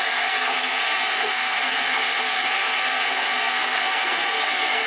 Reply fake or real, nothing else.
fake